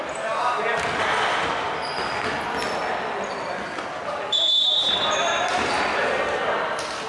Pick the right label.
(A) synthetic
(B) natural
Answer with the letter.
A